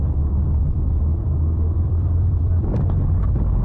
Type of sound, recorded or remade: remade